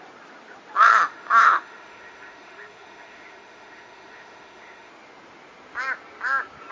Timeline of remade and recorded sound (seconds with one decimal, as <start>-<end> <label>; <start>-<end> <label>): 0.0-0.9 recorded; 0.9-4.9 remade; 4.9-6.7 recorded